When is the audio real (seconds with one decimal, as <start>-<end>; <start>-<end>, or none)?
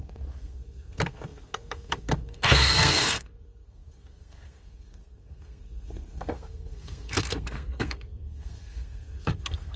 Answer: none